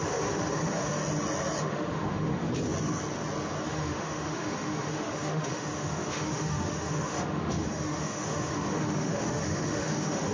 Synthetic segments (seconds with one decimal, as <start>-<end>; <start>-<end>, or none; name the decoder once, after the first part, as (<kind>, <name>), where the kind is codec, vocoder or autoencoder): 0.0-1.0 (autoencoder, DAC-VAE); 1.6-2.5; 3.6-10.3